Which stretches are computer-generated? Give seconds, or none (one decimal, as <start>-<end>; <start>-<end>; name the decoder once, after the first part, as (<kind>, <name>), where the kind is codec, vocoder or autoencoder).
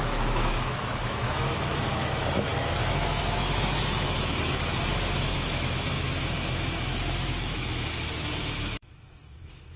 0.0-9.8 (autoencoder, DAC-VAE)